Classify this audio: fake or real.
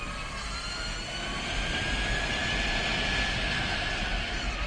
real